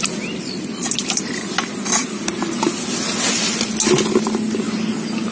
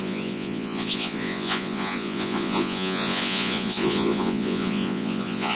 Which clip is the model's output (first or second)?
second